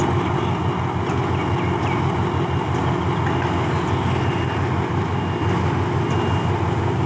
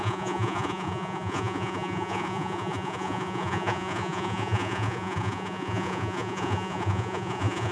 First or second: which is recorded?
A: first